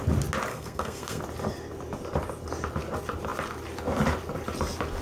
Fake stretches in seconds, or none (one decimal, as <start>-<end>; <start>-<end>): 0.5-1.2